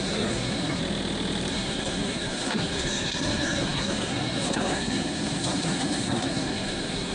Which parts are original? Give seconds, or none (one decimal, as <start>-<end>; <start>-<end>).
0.8-1.5